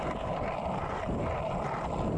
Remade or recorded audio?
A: remade